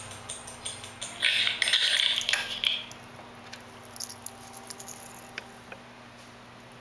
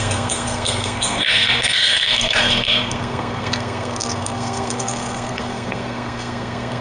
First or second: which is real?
first